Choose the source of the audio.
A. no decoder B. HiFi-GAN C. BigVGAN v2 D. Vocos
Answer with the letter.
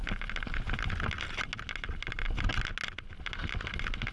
A